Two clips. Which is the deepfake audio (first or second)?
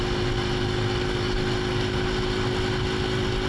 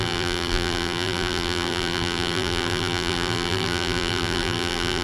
second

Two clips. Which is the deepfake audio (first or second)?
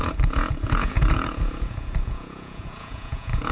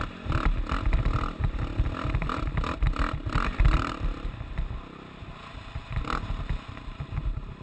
first